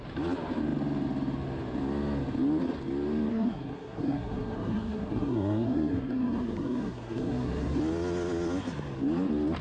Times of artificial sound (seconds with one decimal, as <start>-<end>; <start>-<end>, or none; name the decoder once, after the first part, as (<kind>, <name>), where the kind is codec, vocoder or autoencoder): 3.3-7.8 (codec, SNAC)